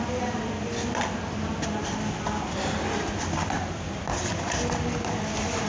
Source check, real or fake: real